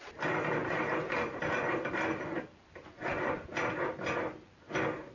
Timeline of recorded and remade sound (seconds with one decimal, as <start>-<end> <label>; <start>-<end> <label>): 0.0-5.1 recorded